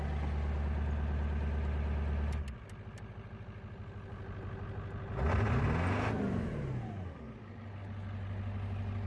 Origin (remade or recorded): recorded